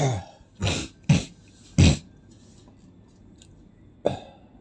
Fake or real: real